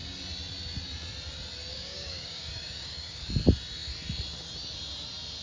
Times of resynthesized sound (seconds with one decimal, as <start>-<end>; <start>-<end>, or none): 1.7-3.2